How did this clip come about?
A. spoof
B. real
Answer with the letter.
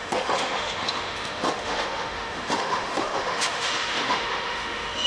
A